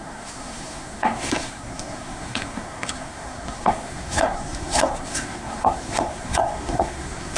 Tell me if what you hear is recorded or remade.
remade